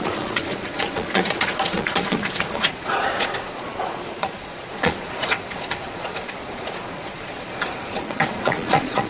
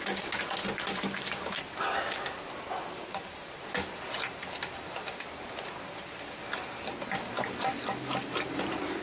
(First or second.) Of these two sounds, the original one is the second